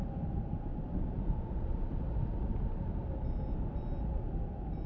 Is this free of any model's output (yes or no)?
yes